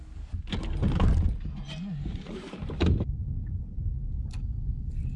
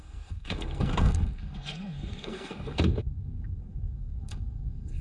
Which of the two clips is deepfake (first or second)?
second